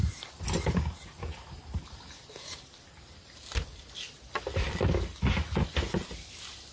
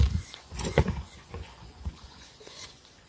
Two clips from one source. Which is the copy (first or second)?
second